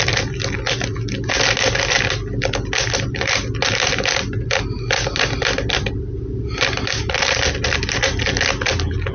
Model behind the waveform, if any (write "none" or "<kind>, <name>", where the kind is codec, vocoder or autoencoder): none